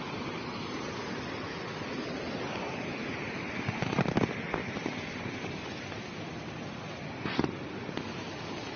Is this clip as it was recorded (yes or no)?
yes